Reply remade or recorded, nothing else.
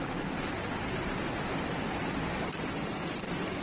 recorded